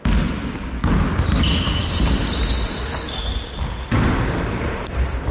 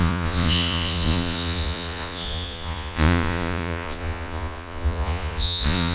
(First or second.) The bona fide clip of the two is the first